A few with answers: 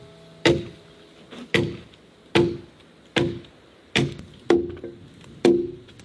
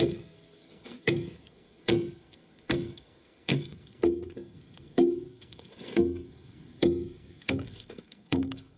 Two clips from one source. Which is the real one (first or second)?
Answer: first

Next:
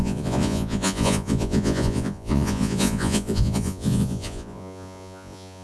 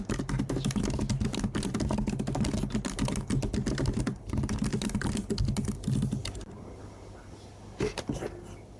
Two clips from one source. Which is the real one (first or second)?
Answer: second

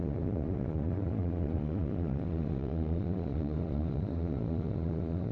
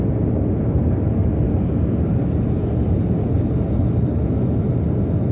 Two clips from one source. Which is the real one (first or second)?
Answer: second